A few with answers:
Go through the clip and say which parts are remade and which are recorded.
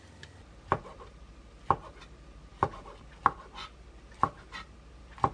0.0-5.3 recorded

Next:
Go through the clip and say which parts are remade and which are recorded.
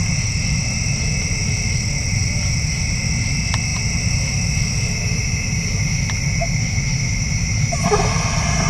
0.0-8.7 recorded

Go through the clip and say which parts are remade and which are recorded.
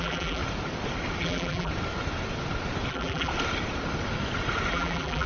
0.0-0.4 remade; 0.4-1.2 recorded; 1.2-1.7 remade; 1.7-2.9 recorded; 2.9-3.3 remade; 3.3-4.7 recorded; 4.7-5.3 remade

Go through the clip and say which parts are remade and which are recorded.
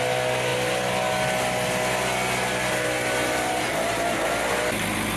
0.0-5.2 recorded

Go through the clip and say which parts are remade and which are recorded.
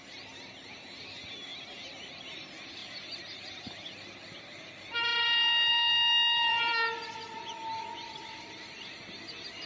0.0-9.7 recorded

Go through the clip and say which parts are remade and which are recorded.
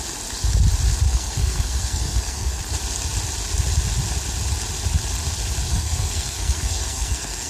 0.0-1.1 recorded; 1.1-2.6 remade; 2.6-5.7 recorded; 5.7-7.5 remade